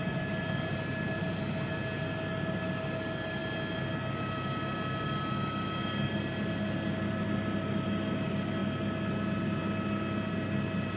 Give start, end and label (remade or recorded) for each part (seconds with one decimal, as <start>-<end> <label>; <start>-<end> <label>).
0.0-11.0 recorded